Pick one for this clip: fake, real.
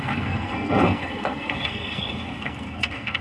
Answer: fake